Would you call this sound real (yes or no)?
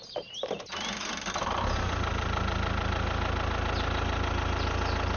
yes